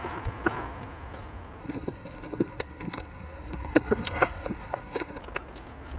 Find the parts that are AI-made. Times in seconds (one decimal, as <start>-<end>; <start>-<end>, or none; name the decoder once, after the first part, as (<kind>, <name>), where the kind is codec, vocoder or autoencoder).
1.6-5.2 (codec, SNAC)